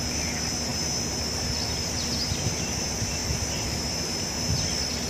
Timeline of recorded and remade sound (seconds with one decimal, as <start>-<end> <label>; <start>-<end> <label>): 0.0-3.2 recorded; 3.2-5.1 remade

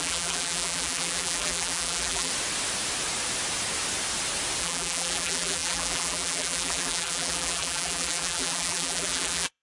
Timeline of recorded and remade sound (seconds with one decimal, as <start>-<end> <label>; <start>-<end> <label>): 0.0-2.3 remade; 2.3-4.6 recorded; 4.6-9.6 remade

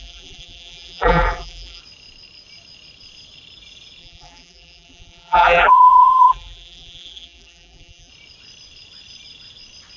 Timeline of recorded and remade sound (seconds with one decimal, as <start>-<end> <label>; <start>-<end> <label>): 0.0-1.8 remade; 1.8-4.0 recorded; 4.0-8.1 remade; 8.1-10.0 recorded

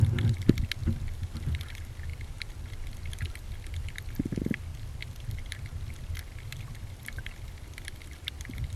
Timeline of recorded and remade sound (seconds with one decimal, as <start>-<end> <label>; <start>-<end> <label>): 0.0-4.7 recorded; 4.7-5.8 remade; 5.8-8.8 recorded

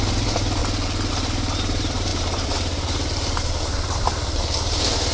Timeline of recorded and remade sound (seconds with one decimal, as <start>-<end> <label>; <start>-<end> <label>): 0.0-0.6 remade; 0.6-1.1 recorded; 1.1-5.1 remade

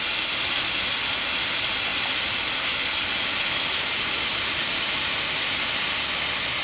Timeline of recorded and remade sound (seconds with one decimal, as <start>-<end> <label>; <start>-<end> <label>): 0.0-6.6 recorded

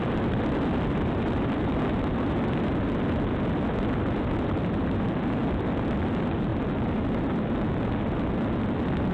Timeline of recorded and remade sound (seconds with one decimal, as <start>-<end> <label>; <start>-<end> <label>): 0.0-6.5 remade; 6.5-8.6 recorded; 8.6-9.1 remade

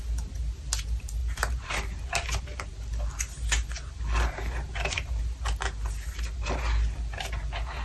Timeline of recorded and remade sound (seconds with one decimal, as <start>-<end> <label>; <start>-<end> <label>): 0.0-1.2 recorded; 1.2-1.7 remade; 1.7-7.8 recorded